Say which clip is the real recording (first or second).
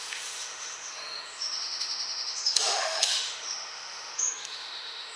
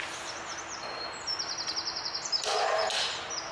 second